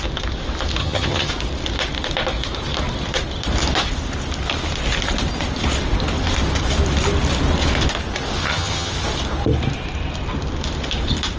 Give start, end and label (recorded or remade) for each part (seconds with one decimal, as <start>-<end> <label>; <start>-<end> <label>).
0.0-0.8 recorded; 0.8-1.3 remade; 1.3-8.4 recorded; 8.4-8.9 remade; 8.9-11.4 recorded